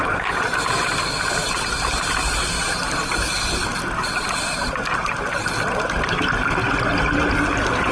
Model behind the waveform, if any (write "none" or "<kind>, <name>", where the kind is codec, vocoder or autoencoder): none